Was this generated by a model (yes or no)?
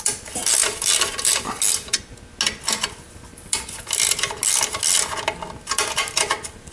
no